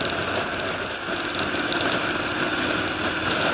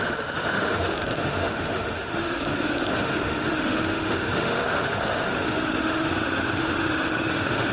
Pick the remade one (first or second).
second